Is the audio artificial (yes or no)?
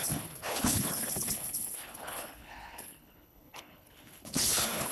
yes